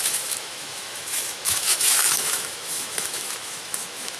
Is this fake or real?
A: fake